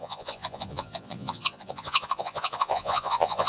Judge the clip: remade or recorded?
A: remade